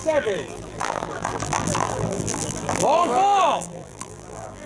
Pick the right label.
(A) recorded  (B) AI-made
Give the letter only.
B